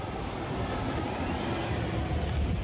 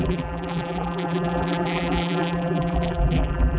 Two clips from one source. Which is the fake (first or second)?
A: second